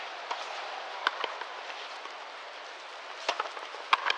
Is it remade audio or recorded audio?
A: recorded